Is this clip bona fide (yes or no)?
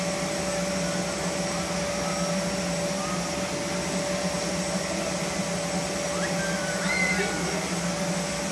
yes